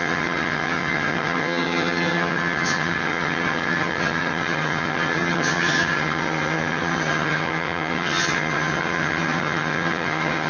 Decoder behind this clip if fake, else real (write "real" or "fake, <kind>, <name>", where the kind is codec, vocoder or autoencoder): fake, vocoder, HiFi-GAN